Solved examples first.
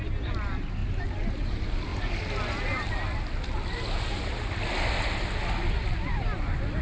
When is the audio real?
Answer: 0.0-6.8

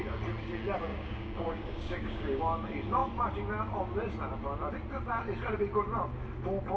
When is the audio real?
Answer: 0.0-0.9; 2.4-6.8

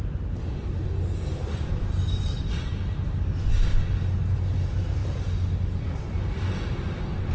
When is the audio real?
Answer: 0.0-7.3

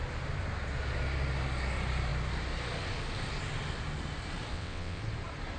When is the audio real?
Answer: 0.0-4.5; 5.0-5.6

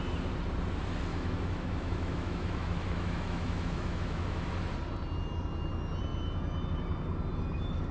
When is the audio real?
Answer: 0.0-1.1; 4.5-7.9

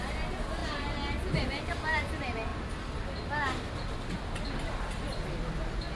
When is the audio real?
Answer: 0.0-6.0

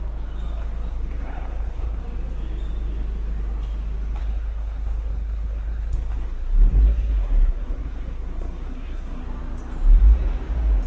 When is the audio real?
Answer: 0.0-0.9; 2.0-4.2; 9.2-10.9